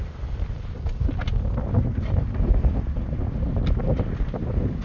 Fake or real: real